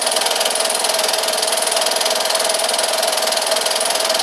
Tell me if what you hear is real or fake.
real